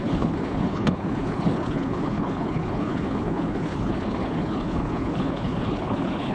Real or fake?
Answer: fake